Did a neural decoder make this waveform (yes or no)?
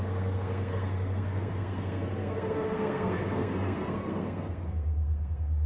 yes